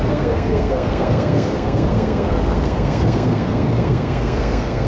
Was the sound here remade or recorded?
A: remade